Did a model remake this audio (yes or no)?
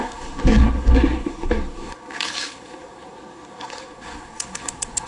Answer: yes